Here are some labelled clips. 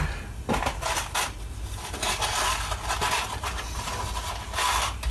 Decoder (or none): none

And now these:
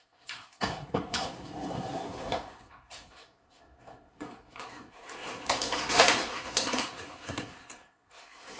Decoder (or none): codec, SNAC